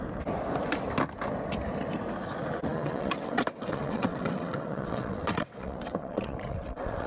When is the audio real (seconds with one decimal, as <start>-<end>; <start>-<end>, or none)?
0.0-2.7